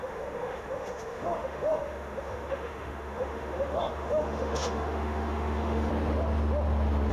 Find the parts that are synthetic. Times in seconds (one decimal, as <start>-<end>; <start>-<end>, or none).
0.0-5.9